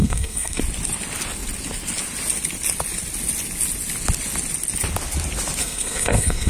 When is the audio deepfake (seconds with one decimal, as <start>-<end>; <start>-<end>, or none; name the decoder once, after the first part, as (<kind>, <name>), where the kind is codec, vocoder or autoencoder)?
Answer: 0.0-0.6 (codec, SNAC); 5.6-6.5